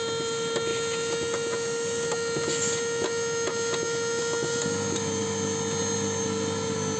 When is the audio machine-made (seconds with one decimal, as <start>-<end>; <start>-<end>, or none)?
none